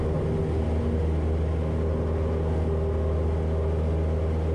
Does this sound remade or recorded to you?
recorded